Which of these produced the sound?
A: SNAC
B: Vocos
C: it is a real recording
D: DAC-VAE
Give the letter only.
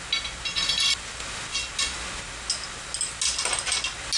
C